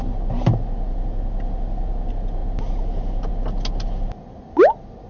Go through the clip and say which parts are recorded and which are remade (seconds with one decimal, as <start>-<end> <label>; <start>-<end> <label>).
0.0-5.1 recorded